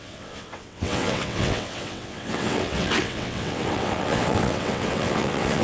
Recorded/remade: remade